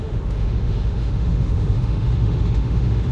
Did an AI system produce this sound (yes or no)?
yes